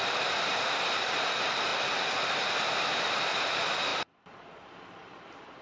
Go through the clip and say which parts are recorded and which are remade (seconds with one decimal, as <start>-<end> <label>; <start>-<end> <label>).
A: 0.0-1.7 remade; 1.7-3.4 recorded; 3.4-5.6 remade